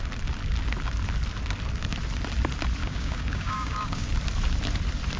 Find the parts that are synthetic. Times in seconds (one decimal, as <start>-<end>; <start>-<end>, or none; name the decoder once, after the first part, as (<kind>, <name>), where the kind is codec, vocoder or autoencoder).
2.8-4.1 (codec, DAC)